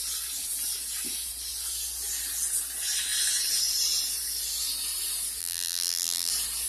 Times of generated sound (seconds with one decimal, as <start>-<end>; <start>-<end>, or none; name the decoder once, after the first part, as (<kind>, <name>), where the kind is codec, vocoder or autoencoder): 5.4-6.3 (vocoder, BigVGAN v2)

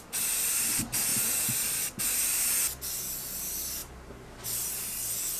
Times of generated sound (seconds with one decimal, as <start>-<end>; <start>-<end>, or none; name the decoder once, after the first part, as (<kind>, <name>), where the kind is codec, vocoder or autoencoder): 3.8-4.9 (vocoder, BigVGAN v2)

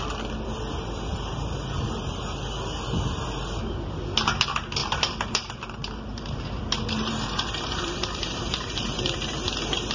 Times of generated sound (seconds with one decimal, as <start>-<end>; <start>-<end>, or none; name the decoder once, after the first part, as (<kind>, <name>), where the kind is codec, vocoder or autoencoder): 1.1-2.2 (vocoder, BigVGAN v2); 4.8-9.5

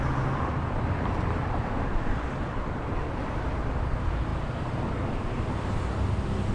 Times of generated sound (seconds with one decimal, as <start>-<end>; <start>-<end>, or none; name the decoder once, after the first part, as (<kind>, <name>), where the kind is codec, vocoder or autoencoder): 0.0-6.5 (vocoder, BigVGAN v2)

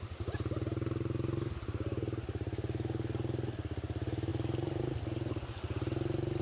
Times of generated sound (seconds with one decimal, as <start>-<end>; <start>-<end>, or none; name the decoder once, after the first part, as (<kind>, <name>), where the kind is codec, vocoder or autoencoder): 4.3-5.0 (vocoder, BigVGAN v2)

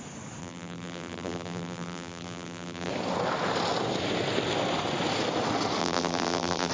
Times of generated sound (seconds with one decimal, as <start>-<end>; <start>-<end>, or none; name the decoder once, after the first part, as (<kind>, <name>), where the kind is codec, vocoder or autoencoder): 0.4-2.9 (vocoder, BigVGAN v2); 5.8-6.7

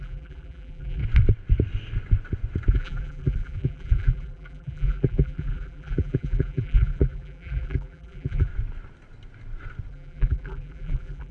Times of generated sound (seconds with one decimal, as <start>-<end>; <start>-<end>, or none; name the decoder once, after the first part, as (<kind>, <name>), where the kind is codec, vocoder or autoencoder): 0.0-1.0 (vocoder, BigVGAN v2); 2.7-8.5; 9.9-11.3